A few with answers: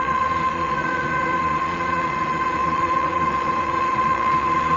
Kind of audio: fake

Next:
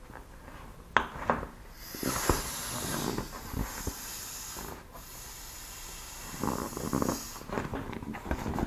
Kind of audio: real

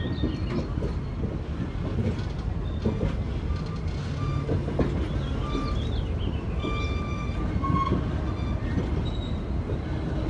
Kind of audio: real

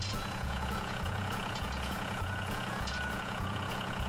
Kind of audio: fake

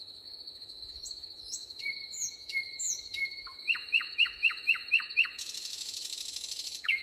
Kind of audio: fake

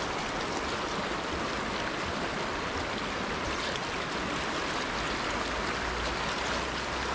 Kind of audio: real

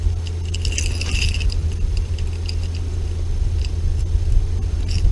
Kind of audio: real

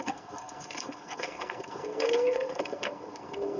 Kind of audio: fake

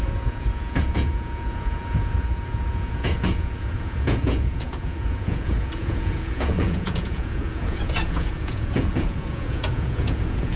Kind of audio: fake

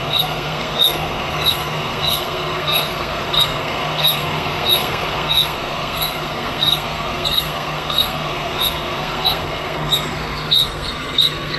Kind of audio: fake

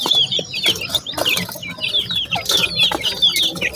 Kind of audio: real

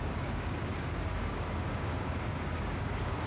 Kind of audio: fake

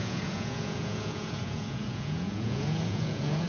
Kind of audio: fake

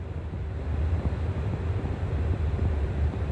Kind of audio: real